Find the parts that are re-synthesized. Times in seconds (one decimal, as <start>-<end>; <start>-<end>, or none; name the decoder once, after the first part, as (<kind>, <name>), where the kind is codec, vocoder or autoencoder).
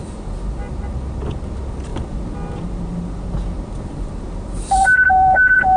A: none